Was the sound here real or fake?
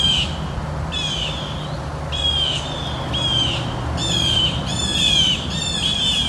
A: real